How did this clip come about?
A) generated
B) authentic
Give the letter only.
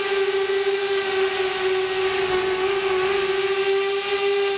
B